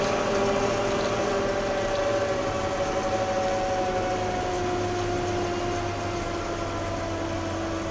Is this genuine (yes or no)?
yes